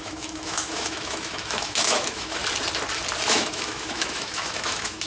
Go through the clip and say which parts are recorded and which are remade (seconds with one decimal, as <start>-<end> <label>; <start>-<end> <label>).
0.0-2.4 remade; 2.4-3.3 recorded; 3.3-5.1 remade